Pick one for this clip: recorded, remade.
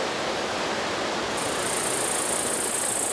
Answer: recorded